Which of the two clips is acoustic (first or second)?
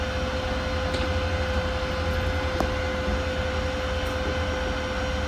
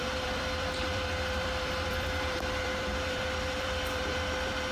first